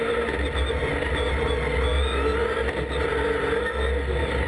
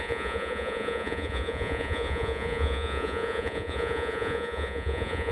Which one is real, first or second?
first